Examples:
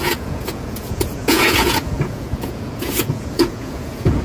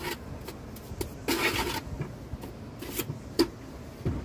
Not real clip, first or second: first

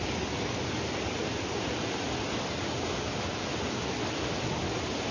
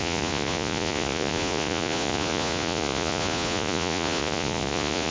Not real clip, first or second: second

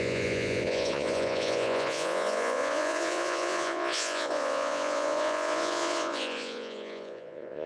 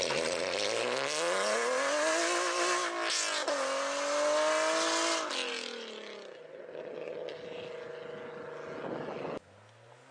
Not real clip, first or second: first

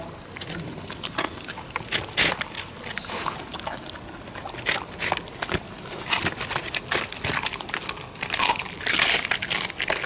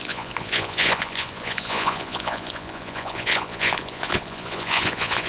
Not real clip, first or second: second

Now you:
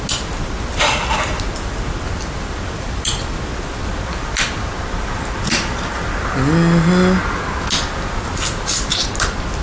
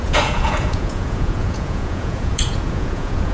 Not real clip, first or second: second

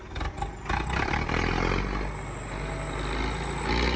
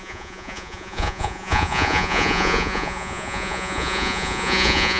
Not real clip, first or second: second